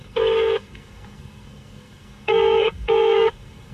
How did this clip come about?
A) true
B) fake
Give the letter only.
B